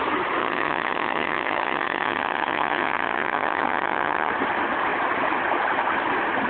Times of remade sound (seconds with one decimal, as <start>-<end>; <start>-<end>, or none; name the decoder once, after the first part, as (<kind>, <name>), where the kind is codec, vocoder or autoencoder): 0.4-4.3 (vocoder, HiFi-GAN)